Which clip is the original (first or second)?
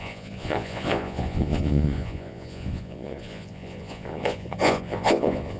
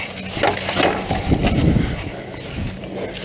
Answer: second